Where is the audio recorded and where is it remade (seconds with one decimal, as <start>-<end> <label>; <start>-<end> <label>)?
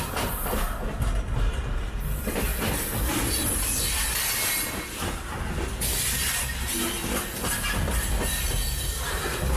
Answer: 0.0-9.6 recorded